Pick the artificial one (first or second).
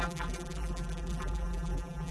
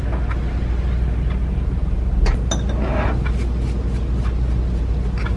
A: first